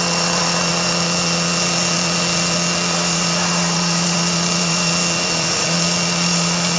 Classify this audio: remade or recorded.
remade